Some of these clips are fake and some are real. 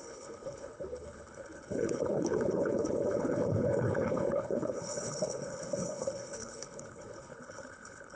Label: fake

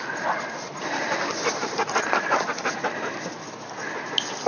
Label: real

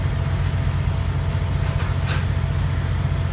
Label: real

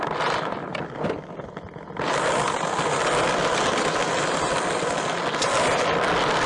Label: real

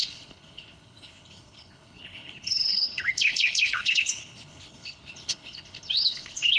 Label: fake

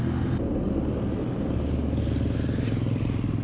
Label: real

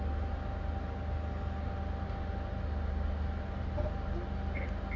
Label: real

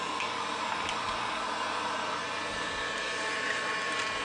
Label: real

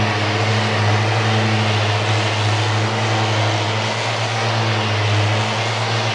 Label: real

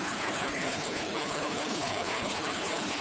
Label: fake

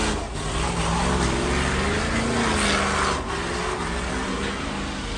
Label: real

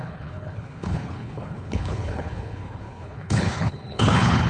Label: fake